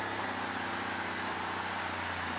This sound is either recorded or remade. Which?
recorded